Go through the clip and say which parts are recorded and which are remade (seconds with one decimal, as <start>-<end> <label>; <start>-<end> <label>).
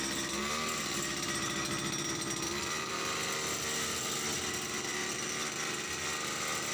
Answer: 0.0-6.7 recorded